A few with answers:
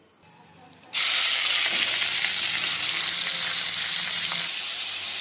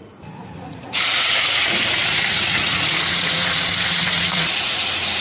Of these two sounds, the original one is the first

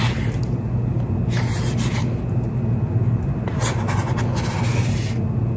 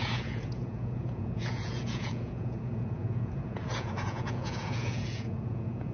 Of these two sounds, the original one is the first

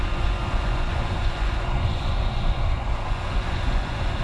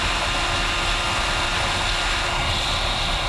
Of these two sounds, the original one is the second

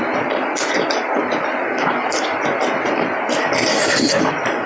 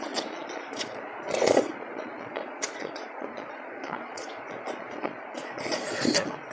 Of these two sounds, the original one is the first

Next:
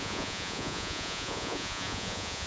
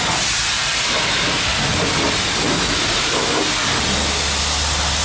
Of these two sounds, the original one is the second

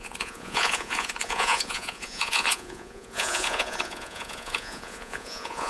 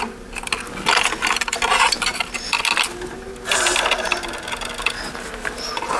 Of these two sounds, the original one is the second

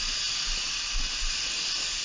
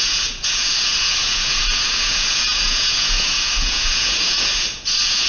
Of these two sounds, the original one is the first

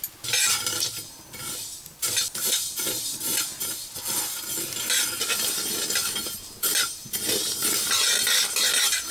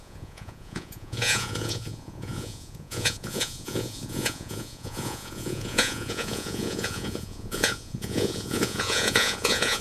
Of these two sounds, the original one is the first